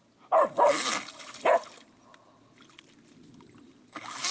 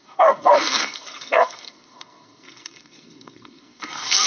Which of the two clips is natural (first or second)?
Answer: first